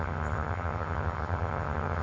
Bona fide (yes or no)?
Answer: no